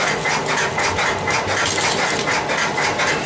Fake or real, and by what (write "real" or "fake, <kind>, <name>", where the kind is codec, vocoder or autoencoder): real